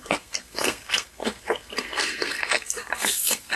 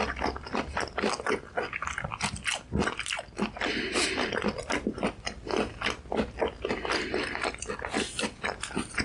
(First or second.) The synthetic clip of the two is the first